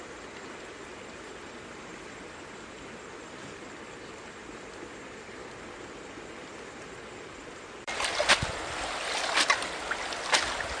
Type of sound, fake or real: real